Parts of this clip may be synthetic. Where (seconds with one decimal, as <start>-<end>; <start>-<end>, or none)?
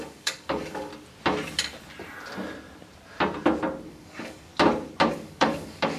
0.0-0.9; 3.9-4.5; 5.1-6.0